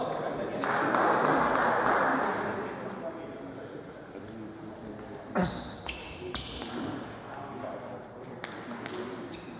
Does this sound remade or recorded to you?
recorded